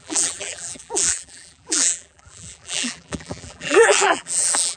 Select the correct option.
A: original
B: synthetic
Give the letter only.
B